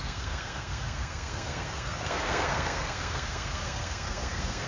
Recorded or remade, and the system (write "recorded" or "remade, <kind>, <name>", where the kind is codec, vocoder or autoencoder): remade, codec, SNAC